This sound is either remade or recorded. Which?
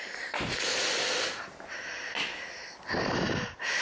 recorded